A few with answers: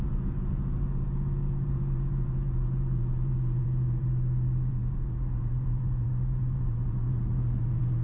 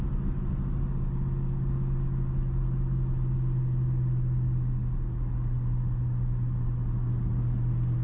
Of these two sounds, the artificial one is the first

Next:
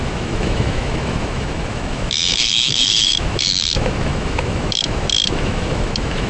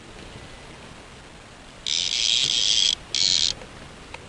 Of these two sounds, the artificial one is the first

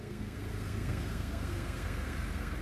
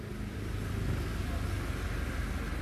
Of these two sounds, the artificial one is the first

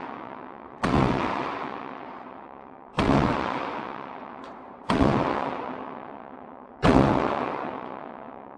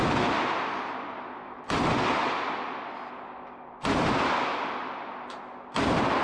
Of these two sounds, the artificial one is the first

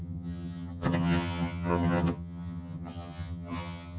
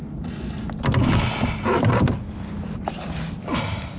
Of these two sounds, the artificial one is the first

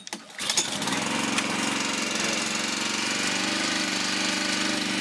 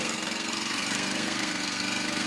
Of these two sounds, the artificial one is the second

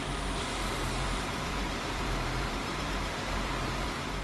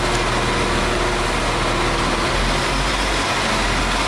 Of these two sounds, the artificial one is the first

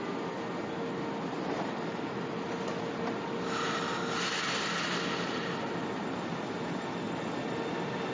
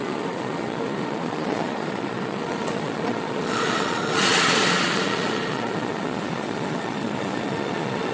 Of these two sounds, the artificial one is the second